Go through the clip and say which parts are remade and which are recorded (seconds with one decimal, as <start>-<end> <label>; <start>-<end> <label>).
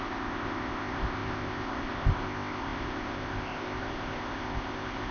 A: 0.0-5.1 remade